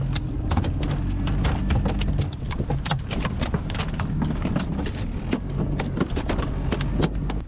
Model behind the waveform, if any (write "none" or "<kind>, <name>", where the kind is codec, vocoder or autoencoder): none